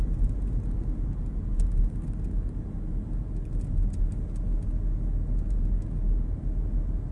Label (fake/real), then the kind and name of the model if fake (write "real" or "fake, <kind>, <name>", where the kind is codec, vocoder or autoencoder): real